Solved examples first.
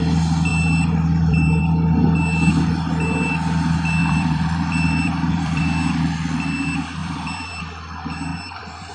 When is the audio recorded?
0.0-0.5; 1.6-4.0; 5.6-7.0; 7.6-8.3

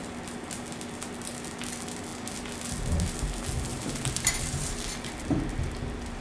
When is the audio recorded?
0.0-3.7; 4.8-6.2

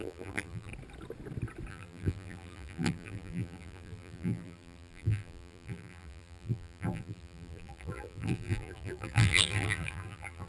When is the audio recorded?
0.7-1.7

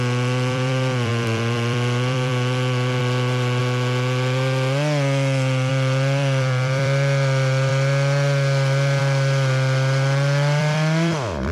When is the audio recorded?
3.6-5.7; 7.7-9.0

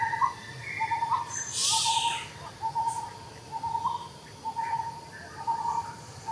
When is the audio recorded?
1.6-5.4

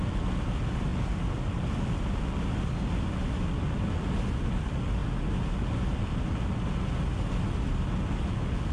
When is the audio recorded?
0.0-8.7

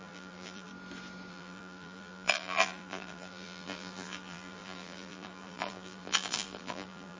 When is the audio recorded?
0.7-1.3